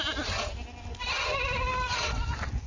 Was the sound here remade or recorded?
recorded